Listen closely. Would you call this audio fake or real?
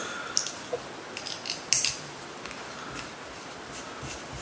real